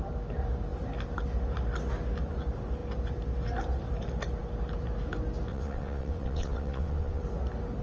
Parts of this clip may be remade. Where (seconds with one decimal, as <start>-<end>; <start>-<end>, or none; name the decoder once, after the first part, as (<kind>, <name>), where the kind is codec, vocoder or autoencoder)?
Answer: 5.5-7.2 (vocoder, WaveNeXt)